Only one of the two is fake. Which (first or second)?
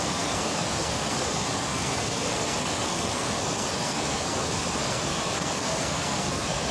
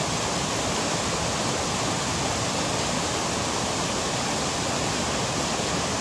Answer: first